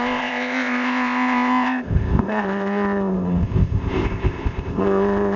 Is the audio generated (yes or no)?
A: yes